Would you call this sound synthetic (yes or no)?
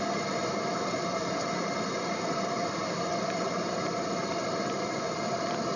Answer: yes